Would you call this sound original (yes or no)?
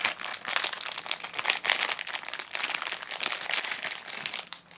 yes